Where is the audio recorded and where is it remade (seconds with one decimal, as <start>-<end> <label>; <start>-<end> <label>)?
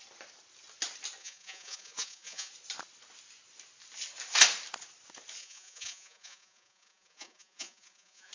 0.0-1.2 recorded; 1.2-2.5 remade; 2.5-5.4 recorded; 5.4-8.3 remade